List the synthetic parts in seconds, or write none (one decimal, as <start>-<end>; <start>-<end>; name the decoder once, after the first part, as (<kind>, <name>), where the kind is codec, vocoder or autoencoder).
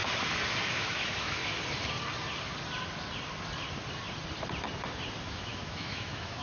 0.7-1.4 (autoencoder, DAC-VAE); 5.2-6.4